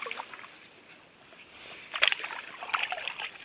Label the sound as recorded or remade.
recorded